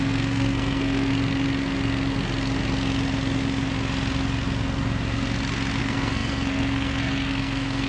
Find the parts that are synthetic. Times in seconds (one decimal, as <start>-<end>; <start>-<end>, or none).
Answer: 0.0-1.1; 5.8-7.9